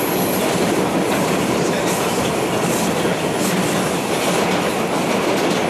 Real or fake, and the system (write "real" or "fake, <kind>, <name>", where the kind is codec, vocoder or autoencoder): real